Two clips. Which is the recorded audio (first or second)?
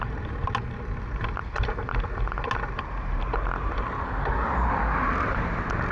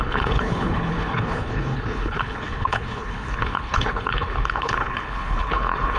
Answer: first